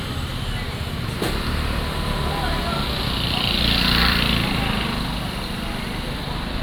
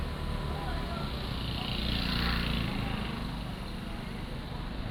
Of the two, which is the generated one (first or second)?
first